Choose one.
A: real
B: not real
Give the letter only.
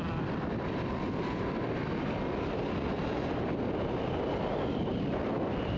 A